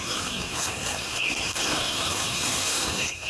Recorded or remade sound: remade